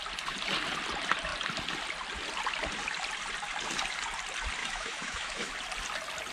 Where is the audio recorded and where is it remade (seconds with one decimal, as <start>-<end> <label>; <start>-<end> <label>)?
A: 0.0-4.6 recorded; 4.6-5.5 remade; 5.5-6.3 recorded